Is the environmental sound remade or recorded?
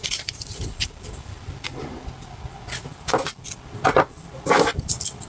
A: recorded